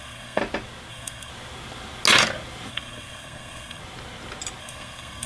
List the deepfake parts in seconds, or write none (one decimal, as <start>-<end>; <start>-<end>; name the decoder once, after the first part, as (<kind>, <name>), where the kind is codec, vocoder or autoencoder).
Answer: 0.0-0.4 (codec, SNAC); 0.9-1.3; 2.7-3.8; 4.6-5.3